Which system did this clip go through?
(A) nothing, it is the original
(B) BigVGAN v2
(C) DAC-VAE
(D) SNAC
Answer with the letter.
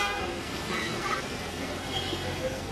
D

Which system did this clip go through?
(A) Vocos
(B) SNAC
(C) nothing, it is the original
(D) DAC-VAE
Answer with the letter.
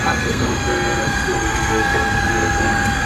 B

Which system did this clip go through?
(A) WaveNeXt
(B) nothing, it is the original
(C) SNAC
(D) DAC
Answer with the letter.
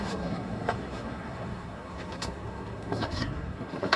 C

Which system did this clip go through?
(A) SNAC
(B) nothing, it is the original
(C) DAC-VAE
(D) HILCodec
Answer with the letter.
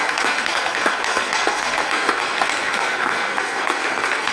A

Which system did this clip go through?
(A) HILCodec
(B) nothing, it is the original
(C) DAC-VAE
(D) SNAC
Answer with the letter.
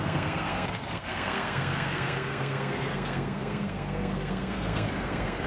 D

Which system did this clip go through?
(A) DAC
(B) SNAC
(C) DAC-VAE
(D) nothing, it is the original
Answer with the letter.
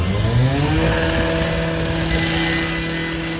D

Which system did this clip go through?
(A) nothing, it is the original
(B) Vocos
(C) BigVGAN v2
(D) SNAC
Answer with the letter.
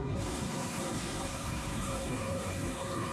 D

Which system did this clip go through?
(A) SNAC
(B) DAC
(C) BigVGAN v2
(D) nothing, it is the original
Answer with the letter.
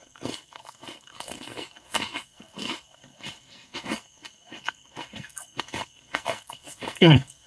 A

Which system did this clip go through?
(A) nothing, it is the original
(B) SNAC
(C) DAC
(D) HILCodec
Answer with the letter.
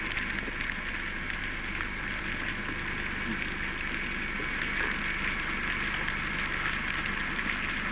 A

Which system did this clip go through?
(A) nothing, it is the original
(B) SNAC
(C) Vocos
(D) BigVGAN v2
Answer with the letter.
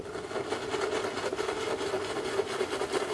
A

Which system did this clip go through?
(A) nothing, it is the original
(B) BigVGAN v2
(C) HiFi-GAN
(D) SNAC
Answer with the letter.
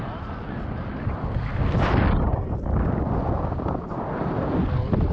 A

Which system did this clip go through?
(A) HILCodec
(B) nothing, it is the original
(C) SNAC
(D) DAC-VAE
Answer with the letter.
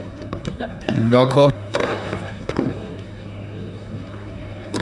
C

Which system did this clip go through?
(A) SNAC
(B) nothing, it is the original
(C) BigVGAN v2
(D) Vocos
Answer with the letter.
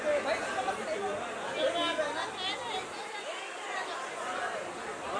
B